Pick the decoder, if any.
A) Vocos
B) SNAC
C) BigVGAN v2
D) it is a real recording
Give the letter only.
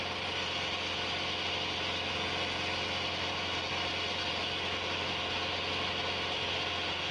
D